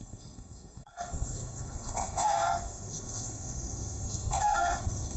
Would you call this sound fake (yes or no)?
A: yes